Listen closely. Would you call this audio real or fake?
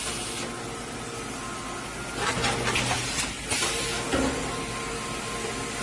real